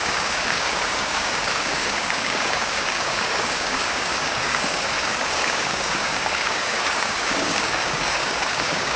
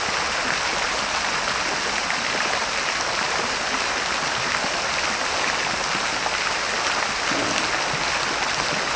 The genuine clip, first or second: second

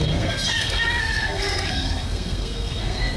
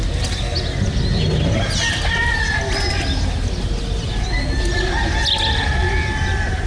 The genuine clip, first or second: second